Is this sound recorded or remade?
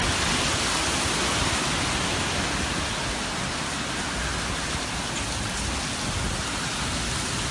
recorded